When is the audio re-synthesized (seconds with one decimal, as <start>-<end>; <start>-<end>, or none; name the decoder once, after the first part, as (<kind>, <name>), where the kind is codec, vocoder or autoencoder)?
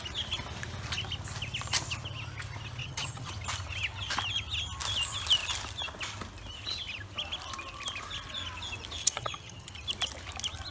2.8-3.3 (vocoder, HiFi-GAN); 9.0-9.7